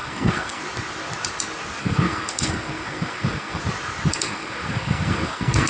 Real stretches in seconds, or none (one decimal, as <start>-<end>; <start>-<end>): 0.6-1.8; 3.6-4.1